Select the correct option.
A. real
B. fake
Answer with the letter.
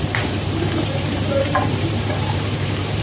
B